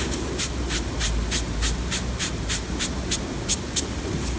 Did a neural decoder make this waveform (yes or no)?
no